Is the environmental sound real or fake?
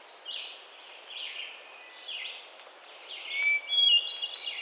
real